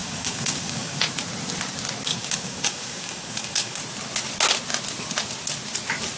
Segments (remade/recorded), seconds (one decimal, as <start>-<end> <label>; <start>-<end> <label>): 0.0-1.0 remade; 1.0-2.1 recorded; 2.1-3.8 remade; 3.8-6.2 recorded